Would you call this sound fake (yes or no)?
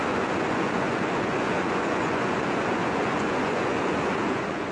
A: yes